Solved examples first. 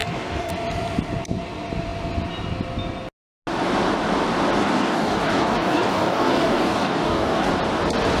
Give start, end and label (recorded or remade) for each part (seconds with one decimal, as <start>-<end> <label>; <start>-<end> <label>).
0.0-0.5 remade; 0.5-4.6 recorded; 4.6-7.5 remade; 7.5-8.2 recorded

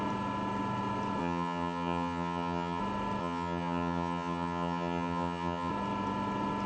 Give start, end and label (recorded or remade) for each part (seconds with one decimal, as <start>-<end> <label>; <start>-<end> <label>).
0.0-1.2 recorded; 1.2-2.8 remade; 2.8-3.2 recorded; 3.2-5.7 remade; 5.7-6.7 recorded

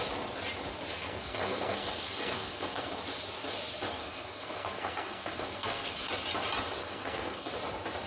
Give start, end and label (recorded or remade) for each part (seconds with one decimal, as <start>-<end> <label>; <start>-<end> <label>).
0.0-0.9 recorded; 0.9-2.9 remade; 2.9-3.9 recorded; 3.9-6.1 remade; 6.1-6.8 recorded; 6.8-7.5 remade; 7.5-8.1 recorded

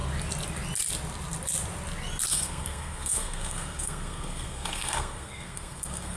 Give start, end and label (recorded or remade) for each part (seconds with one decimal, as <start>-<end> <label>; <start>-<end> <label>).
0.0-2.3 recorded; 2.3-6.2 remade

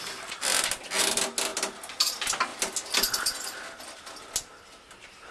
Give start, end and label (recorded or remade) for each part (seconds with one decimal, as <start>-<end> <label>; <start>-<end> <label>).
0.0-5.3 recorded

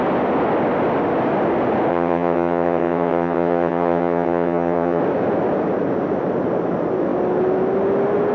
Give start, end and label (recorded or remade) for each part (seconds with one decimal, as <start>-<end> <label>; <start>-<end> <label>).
0.0-1.9 recorded; 1.9-5.0 remade; 5.0-8.3 recorded